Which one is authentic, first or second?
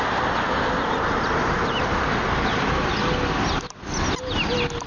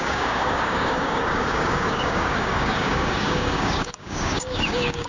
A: first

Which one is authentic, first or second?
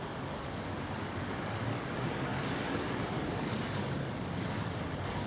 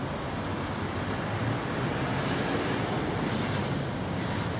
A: second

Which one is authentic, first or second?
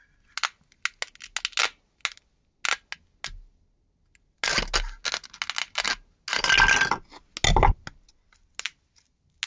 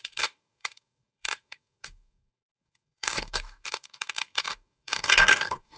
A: first